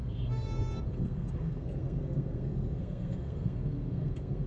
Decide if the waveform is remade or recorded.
remade